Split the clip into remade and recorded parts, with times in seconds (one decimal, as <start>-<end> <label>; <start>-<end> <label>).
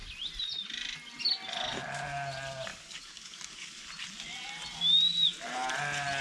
0.0-2.7 recorded; 2.7-3.9 remade; 3.9-6.2 recorded